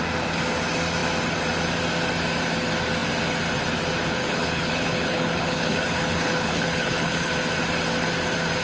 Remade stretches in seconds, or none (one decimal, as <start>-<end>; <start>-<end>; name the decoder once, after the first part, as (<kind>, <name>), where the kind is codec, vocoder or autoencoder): 4.2-7.3 (codec, HILCodec)